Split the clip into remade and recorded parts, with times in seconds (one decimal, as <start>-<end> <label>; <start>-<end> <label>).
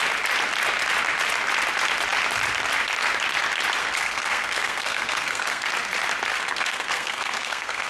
0.0-3.8 recorded; 3.8-5.7 remade; 5.7-6.3 recorded; 6.3-7.9 remade